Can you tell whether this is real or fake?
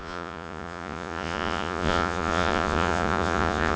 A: fake